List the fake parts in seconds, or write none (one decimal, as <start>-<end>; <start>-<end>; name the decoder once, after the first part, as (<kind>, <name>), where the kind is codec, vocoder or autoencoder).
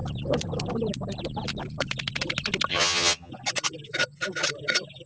2.7-3.3 (vocoder, HiFi-GAN)